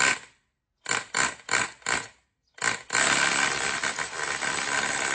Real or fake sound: real